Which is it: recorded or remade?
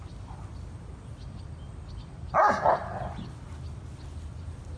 recorded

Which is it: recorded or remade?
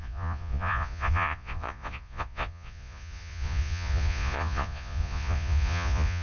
remade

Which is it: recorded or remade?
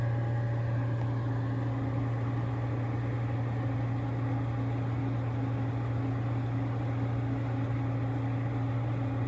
recorded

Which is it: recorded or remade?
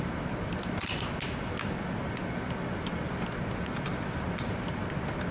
recorded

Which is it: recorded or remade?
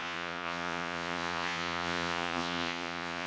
remade